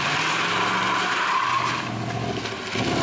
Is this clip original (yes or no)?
yes